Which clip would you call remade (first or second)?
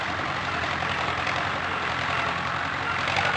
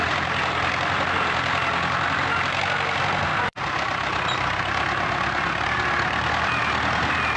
first